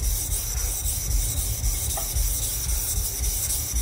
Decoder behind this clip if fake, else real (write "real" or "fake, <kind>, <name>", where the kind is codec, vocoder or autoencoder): real